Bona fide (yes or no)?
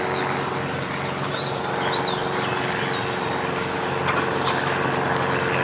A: yes